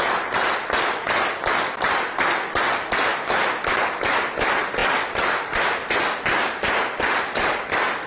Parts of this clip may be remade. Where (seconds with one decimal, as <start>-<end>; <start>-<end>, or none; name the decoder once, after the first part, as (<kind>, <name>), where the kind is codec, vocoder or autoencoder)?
none